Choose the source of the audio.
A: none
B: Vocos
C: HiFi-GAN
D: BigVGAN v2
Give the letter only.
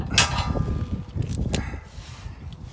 A